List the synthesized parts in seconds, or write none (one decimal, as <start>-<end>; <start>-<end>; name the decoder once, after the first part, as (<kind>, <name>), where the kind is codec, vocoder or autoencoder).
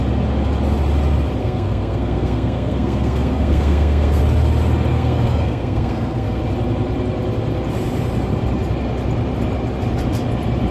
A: 1.4-4.2 (codec, SNAC); 4.9-6.4